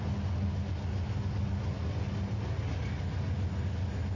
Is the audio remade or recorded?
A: recorded